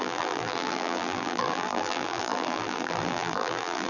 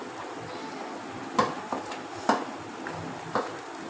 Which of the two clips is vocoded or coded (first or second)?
first